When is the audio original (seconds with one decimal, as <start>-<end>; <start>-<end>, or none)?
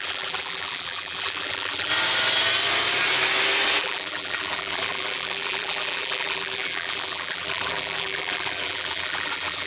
1.9-3.8